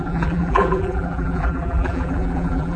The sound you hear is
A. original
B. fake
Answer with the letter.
B